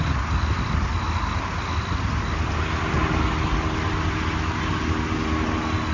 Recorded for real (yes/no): yes